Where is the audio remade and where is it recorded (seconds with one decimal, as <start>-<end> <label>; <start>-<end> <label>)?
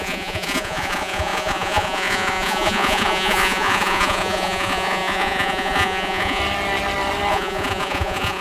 0.0-6.4 remade; 6.4-7.3 recorded; 7.3-8.4 remade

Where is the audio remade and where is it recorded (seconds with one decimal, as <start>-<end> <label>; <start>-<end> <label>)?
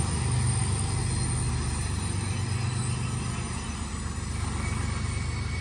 0.0-5.6 recorded